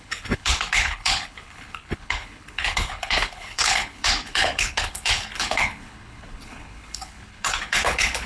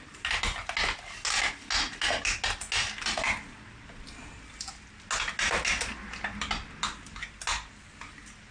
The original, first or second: second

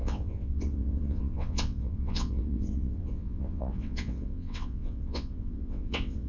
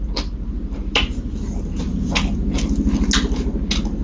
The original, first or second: second